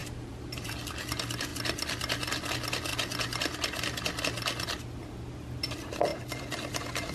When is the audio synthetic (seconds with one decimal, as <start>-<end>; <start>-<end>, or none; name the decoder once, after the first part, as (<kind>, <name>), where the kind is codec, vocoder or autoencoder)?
0.0-0.7 (vocoder, BigVGAN v2)